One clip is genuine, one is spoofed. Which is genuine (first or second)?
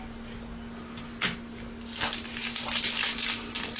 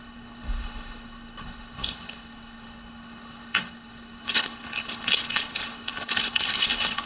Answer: first